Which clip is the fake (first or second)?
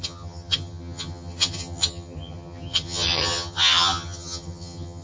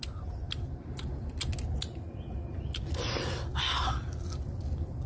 first